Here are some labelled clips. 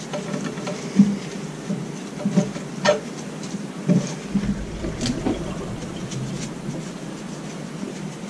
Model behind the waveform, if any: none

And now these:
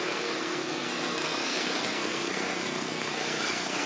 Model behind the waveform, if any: codec, SNAC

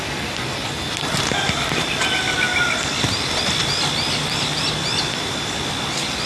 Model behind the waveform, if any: none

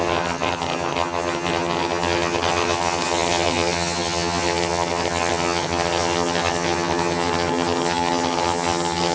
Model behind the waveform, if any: vocoder, HiFi-GAN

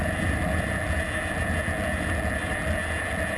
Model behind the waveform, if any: none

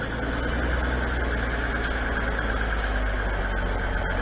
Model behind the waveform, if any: none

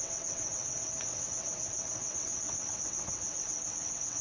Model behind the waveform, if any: vocoder, WaveNeXt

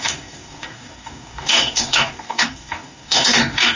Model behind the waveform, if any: codec, DAC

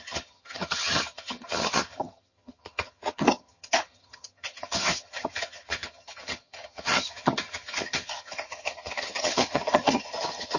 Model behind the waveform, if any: vocoder, HiFi-GAN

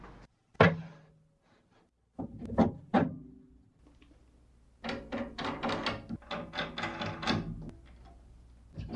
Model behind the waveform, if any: none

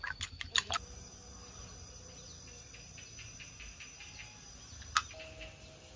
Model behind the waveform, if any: none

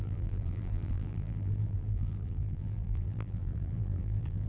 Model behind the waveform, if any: vocoder, BigVGAN v2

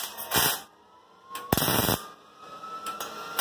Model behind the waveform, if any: none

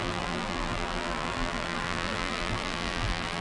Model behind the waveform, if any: vocoder, BigVGAN v2